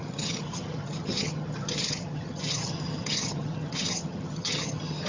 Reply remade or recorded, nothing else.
remade